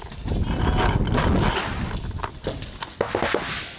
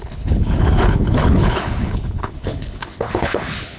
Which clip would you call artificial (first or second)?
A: second